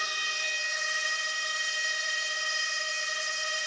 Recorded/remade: remade